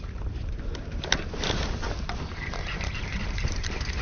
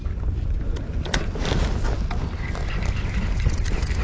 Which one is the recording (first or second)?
second